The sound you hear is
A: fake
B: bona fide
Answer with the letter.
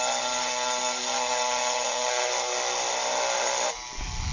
B